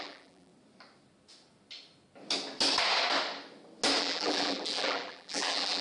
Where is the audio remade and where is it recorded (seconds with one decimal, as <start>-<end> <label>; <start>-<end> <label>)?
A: 0.0-0.5 remade; 0.5-4.0 recorded; 4.0-5.8 remade